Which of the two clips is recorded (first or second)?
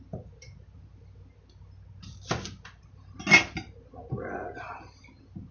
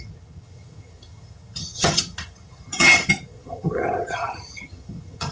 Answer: first